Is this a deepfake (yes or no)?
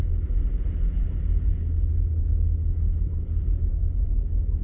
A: no